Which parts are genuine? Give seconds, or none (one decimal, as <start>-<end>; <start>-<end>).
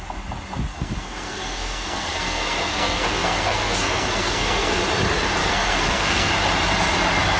0.0-0.7; 4.8-5.4; 6.3-7.4